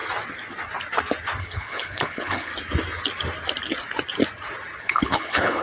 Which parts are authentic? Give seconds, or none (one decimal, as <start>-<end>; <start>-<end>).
0.0-1.4; 2.5-4.8